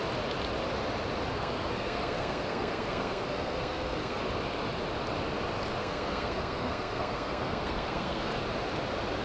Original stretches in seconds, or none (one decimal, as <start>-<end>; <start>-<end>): 0.0-1.3; 4.2-5.8; 8.4-9.2